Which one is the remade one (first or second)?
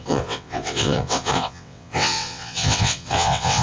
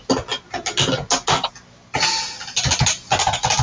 first